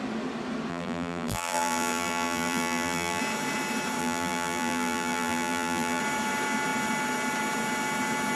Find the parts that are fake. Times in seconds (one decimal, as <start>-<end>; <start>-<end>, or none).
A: 0.7-3.2; 4.0-6.0